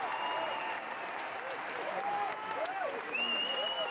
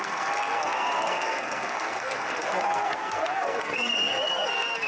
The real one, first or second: first